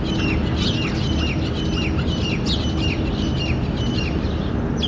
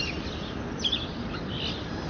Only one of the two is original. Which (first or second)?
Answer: first